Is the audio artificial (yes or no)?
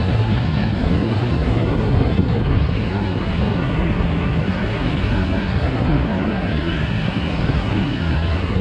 yes